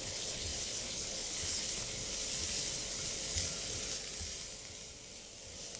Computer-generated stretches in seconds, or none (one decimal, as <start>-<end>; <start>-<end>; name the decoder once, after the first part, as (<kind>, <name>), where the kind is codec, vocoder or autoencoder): 0.0-1.9 (codec, HILCodec)